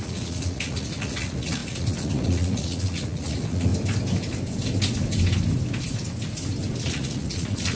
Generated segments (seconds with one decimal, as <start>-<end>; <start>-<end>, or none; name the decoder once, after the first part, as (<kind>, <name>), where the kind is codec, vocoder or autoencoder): 0.0-3.7 (vocoder, Vocos); 6.8-7.8